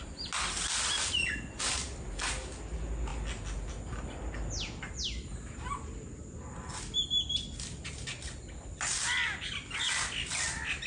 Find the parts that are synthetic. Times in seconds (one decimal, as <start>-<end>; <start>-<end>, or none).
none